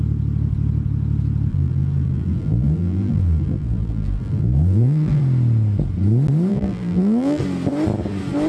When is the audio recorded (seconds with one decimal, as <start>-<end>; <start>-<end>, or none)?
0.0-1.5; 5.2-6.5; 7.4-8.5